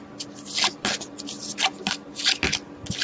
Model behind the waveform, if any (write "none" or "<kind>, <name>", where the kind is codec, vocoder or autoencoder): none